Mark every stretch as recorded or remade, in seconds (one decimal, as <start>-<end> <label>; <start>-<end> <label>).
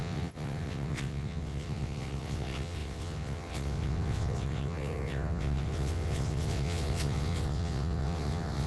0.0-8.7 remade